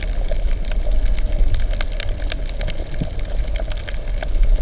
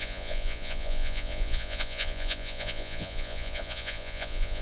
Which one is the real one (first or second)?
first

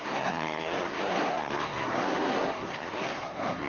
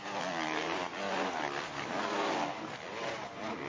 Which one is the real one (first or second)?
second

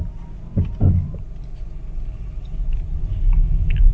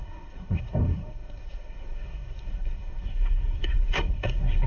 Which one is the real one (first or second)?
first